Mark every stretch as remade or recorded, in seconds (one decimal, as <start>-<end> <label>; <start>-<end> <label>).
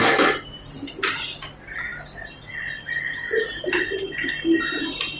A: 0.0-5.2 recorded